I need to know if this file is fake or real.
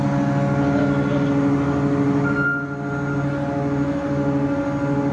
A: real